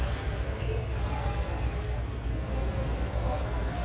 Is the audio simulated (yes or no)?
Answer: yes